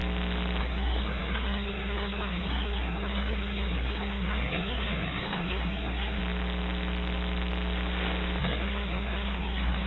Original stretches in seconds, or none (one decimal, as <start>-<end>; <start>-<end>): 0.0-0.6; 6.2-8.4